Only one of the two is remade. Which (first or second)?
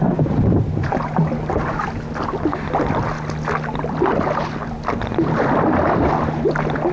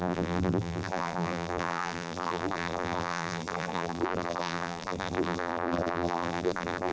second